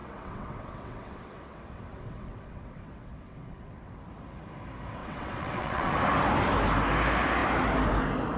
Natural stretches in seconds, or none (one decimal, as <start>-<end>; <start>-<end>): 4.0-5.0; 5.9-8.4